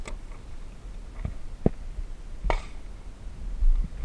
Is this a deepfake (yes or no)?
no